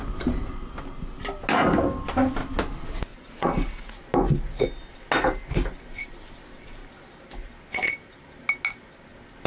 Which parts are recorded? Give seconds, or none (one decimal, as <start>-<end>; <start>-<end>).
0.0-3.1; 3.9-9.5